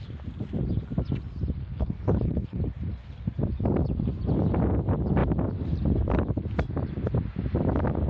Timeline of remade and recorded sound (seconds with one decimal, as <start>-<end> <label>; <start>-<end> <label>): 0.0-1.6 recorded; 1.6-2.6 remade; 2.6-8.1 recorded